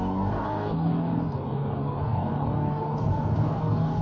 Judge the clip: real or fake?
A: fake